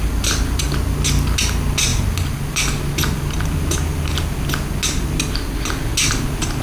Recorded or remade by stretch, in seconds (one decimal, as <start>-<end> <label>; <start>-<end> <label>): 0.0-6.6 recorded